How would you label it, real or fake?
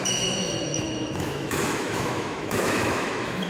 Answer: fake